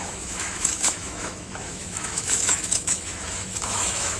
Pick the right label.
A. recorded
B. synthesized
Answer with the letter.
B